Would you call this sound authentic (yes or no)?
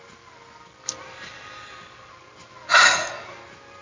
yes